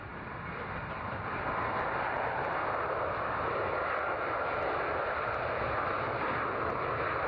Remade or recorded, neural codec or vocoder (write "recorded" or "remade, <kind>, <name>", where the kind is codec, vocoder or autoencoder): recorded